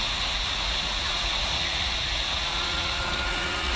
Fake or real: fake